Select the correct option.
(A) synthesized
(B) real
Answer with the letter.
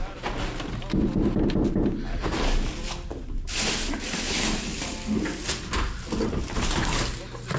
B